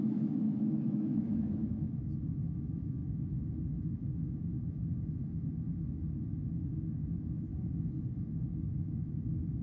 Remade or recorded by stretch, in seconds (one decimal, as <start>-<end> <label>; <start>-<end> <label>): 0.0-7.5 remade; 7.5-8.2 recorded; 8.2-9.6 remade